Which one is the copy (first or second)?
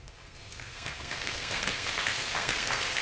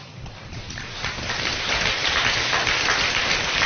first